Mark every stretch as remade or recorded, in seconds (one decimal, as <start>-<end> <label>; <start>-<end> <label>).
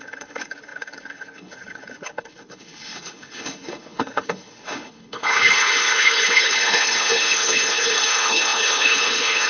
0.0-9.5 remade